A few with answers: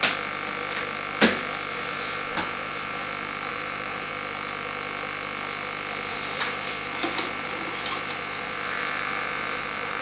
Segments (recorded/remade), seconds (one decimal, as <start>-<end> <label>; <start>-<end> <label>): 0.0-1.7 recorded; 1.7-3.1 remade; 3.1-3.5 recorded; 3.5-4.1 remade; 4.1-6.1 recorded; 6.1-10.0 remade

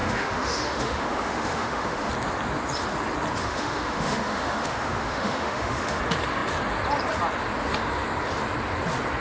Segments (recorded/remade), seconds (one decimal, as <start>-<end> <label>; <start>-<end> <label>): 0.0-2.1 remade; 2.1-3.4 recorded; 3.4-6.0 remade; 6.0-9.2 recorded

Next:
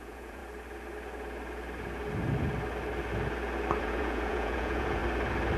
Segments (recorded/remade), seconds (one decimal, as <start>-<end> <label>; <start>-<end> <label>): 0.0-0.4 remade; 0.4-3.8 recorded; 3.8-5.0 remade; 5.0-5.6 recorded

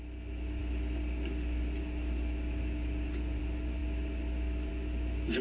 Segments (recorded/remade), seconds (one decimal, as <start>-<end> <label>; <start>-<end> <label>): 0.0-5.4 recorded

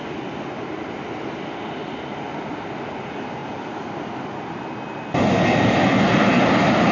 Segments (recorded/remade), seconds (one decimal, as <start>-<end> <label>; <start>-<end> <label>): 0.0-6.9 recorded

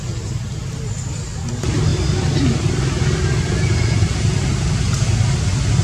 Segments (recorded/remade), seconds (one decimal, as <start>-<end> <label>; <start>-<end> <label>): 0.0-5.8 recorded